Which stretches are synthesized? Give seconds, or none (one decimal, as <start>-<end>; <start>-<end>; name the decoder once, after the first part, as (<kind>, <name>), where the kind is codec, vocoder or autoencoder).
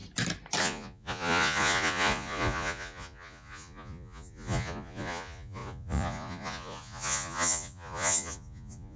0.6-9.0 (vocoder, Vocos)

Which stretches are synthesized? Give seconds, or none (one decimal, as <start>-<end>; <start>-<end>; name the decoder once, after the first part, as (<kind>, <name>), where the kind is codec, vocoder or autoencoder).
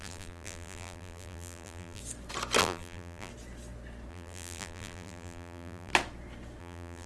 0.0-2.0 (vocoder, BigVGAN v2); 2.6-3.3; 4.1-5.9; 6.6-7.1